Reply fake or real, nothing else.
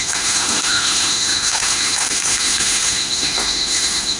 fake